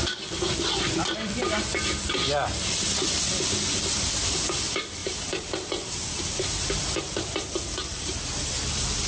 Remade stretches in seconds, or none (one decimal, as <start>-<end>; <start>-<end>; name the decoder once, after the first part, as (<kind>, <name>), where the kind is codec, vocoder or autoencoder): 1.4-2.1 (vocoder, BigVGAN v2); 5.0-7.0; 7.9-8.5